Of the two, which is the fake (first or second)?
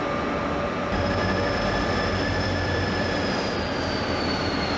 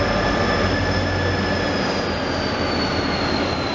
first